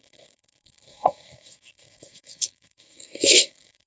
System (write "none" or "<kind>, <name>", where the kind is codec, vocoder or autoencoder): codec, SNAC